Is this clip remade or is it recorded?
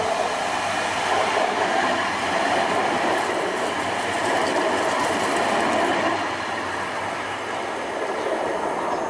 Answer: recorded